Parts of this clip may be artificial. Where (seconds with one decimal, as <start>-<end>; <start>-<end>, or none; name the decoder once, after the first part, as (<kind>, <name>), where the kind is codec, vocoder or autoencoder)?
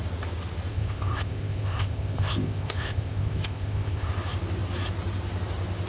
0.7-4.1 (codec, ZipCodec)